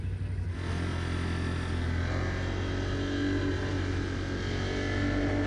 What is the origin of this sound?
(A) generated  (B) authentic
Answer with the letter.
B